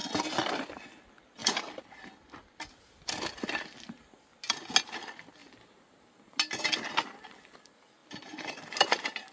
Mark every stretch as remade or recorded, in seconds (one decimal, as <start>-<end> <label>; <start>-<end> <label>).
0.0-1.4 recorded; 1.4-2.1 remade; 2.1-8.0 recorded; 8.0-8.6 remade; 8.6-9.3 recorded